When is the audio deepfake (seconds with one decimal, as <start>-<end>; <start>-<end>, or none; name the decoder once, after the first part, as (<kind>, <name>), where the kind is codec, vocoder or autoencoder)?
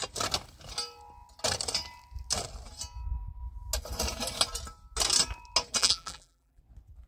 5.8-6.6 (vocoder, BigVGAN v2)